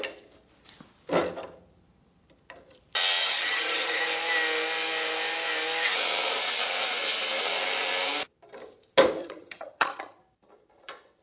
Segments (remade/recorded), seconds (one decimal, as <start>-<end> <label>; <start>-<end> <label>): 0.0-3.2 recorded; 3.2-4.0 remade; 4.0-9.2 recorded; 9.2-10.2 remade; 10.2-11.2 recorded